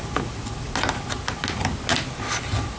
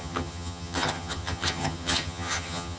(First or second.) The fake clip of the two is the second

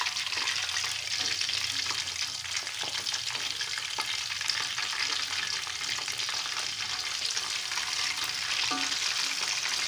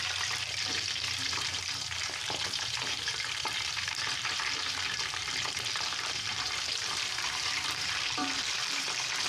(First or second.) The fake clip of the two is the second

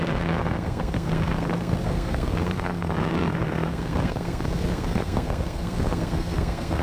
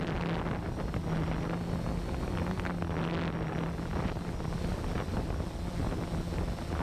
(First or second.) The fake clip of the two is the first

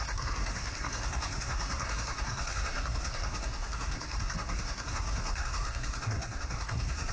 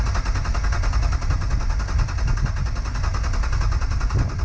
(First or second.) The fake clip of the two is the first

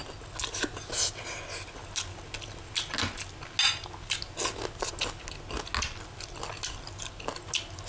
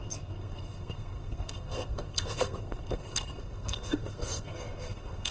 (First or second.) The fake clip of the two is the second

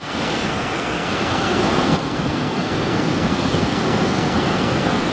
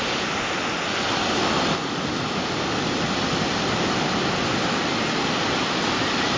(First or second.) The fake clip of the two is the first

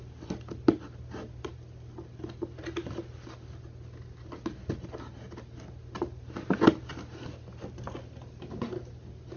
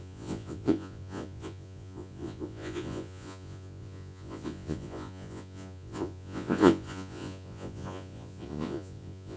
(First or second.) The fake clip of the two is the second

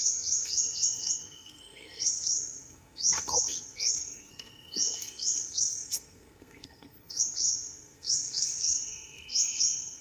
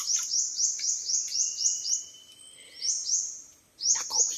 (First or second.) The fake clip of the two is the first